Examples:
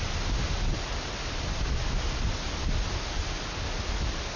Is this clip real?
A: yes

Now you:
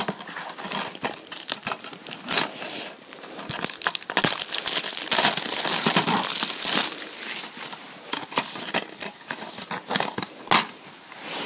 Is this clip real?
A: yes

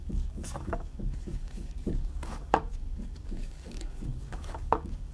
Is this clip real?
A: no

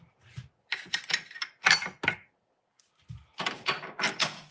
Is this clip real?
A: yes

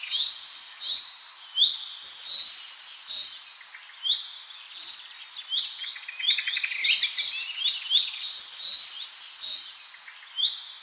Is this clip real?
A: yes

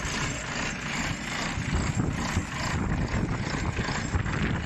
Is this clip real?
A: yes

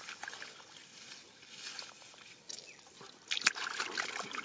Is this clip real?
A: yes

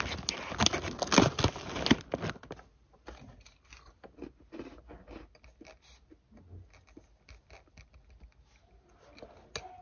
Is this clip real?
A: yes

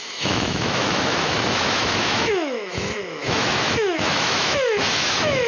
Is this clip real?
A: no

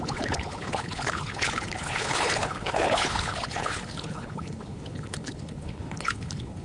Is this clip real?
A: no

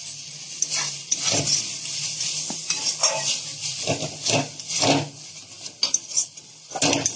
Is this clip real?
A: yes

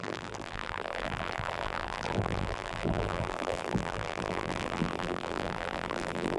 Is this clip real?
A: no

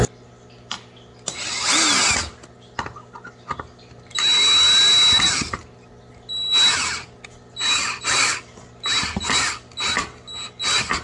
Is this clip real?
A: yes